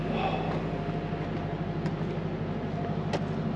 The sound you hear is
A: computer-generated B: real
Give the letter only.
B